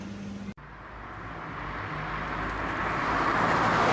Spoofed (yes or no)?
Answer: no